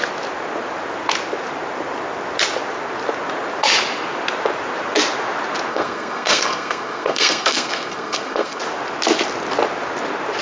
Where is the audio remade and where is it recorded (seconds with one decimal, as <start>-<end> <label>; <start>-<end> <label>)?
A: 0.0-5.7 recorded; 5.7-8.6 remade; 8.6-10.4 recorded